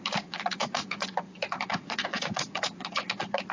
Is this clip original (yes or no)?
no